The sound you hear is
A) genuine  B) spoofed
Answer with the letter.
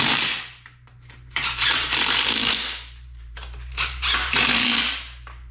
B